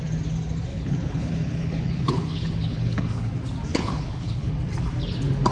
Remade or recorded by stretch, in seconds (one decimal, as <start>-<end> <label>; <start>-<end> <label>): 0.0-0.7 recorded; 0.7-3.3 remade; 3.3-3.7 recorded; 3.7-4.5 remade; 4.5-5.5 recorded